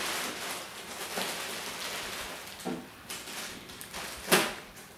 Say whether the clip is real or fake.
real